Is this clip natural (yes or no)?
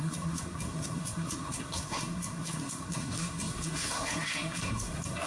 no